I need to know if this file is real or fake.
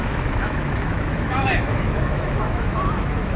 fake